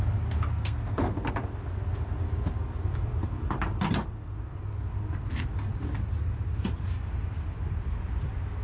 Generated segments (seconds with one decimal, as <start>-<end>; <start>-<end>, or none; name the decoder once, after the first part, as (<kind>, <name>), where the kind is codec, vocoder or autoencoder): 0.5-1.3 (codec, SNAC)